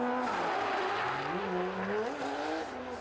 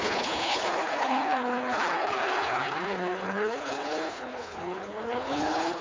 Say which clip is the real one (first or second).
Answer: first